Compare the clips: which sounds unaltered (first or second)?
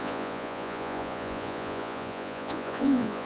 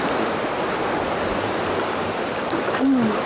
second